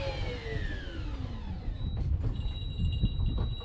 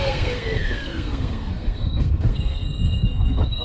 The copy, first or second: second